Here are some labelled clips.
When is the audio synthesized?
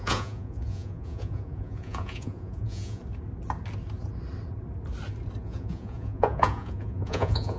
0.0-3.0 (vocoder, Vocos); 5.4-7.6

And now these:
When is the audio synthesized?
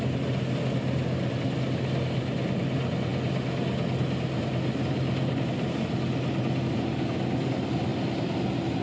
none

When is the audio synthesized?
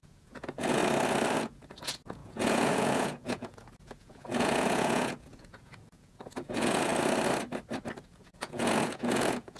0.0-0.8 (vocoder, Vocos); 1.4-6.9; 8.0-9.6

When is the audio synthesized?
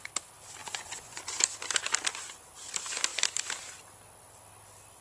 0.6-1.4 (vocoder, Vocos)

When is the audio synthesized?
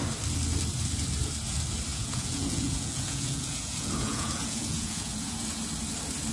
1.9-5.6 (vocoder, Vocos)